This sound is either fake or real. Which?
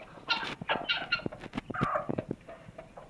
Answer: real